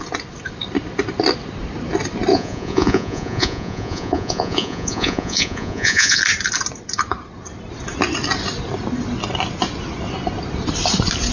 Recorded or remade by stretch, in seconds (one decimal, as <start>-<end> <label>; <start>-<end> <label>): 0.0-2.3 recorded; 2.3-6.2 remade; 6.2-11.3 recorded